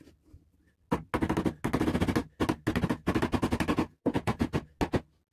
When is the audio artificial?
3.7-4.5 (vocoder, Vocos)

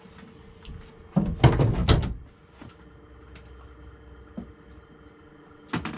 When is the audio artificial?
none

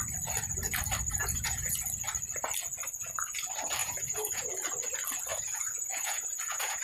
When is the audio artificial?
1.2-1.8 (vocoder, Vocos); 3.8-4.5; 5.3-6.8

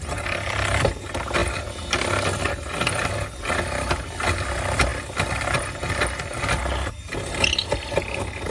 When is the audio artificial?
none

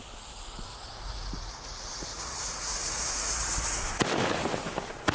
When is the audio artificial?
0.7-3.8 (vocoder, Vocos)

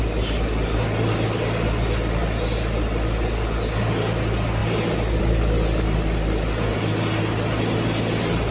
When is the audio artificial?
none

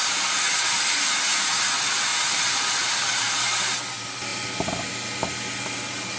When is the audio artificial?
2.1-2.9 (vocoder, Vocos)